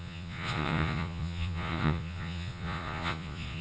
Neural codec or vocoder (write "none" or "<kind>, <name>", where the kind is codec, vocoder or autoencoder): vocoder, Vocos